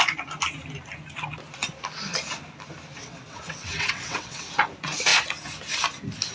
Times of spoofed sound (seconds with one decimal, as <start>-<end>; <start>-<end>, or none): 3.0-4.5